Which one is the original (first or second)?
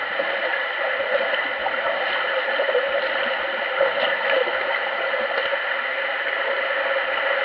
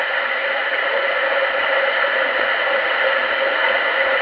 first